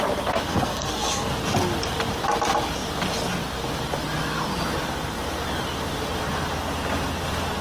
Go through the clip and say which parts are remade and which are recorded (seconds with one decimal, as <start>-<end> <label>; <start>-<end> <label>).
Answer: 0.0-0.5 recorded; 0.5-1.3 remade; 1.3-7.6 recorded